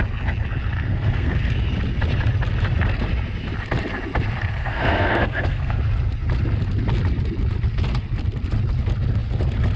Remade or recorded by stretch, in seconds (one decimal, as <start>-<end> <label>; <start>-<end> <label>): 0.0-0.9 recorded; 0.9-1.5 remade; 1.5-4.6 recorded; 4.6-5.8 remade; 5.8-9.8 recorded